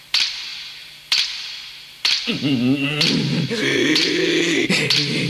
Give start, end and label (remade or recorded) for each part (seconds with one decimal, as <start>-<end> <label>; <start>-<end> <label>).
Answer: 0.0-5.3 recorded